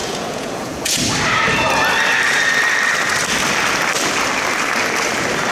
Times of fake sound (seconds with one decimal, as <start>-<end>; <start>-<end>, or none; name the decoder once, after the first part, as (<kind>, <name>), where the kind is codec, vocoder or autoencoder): 0.0-1.0 (vocoder, Vocos)